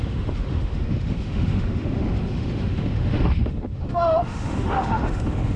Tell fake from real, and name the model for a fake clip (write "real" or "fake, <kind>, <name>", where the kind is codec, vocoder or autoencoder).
fake, autoencoder, DAC-VAE